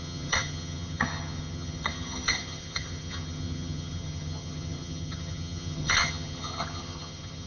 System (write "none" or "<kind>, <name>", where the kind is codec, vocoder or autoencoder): vocoder, HiFi-GAN